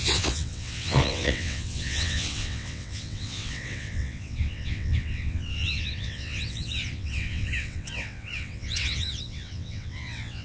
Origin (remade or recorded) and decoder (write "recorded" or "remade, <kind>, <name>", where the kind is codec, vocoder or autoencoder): remade, vocoder, WaveNeXt